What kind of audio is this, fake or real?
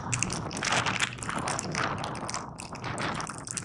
real